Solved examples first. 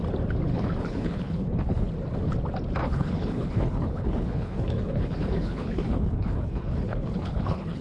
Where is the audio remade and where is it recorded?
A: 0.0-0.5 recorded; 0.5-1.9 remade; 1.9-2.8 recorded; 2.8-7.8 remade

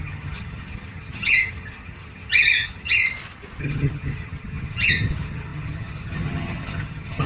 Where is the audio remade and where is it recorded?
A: 0.0-3.0 remade; 3.0-3.6 recorded; 3.6-7.3 remade

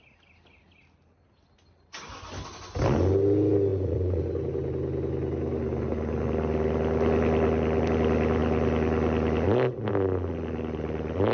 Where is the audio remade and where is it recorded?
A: 0.0-3.7 recorded; 3.7-4.2 remade; 4.2-11.3 recorded